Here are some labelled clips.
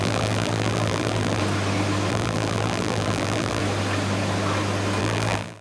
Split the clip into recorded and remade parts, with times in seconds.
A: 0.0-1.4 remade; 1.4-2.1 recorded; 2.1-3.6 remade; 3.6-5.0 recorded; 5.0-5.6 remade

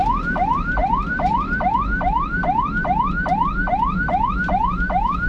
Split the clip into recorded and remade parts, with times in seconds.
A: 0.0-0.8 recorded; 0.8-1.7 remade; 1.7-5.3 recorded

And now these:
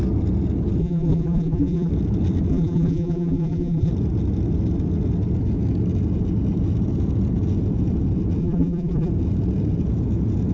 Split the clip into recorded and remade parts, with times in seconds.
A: 0.0-0.8 recorded; 0.8-1.9 remade; 1.9-2.5 recorded; 2.5-3.9 remade; 3.9-8.4 recorded; 8.4-9.1 remade; 9.1-10.5 recorded